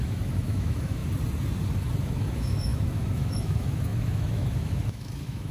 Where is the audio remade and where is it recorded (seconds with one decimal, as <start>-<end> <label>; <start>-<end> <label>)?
0.0-1.0 remade; 1.0-2.0 recorded; 2.0-5.5 remade